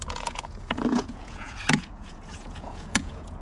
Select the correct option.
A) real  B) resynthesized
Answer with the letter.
B